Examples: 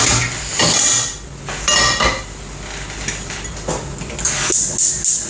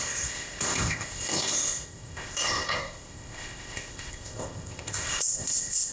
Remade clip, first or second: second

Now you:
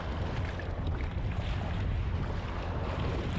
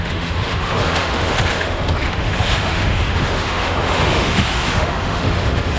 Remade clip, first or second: second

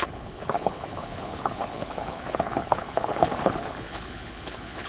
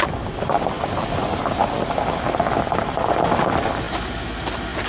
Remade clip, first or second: first